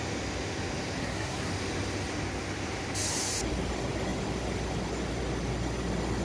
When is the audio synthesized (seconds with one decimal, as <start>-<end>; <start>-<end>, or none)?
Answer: 1.0-1.5